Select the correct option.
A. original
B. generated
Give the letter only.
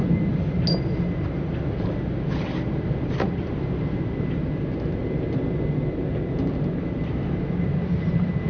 A